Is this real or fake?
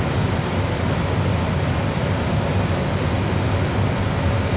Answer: real